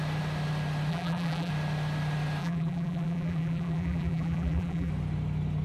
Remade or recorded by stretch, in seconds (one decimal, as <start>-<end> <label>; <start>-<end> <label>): 0.0-0.9 recorded; 0.9-1.5 remade; 1.5-2.4 recorded; 2.4-4.9 remade; 4.9-5.6 recorded